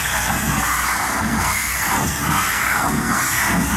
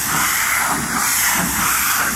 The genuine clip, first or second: second